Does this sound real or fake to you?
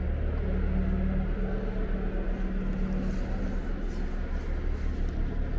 real